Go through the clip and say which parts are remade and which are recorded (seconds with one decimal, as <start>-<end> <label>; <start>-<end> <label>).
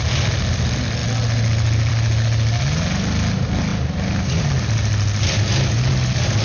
0.0-6.4 recorded